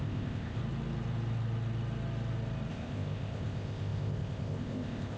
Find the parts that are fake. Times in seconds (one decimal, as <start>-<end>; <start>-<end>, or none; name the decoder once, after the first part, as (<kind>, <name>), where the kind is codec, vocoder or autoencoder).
0.0-0.6 (codec, ZipCodec); 2.7-5.2